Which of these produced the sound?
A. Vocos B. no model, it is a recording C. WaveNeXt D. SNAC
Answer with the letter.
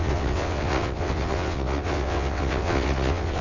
C